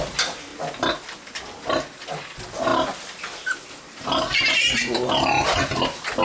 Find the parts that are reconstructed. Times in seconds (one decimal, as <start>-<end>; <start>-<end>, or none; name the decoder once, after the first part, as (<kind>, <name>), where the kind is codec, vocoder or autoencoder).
none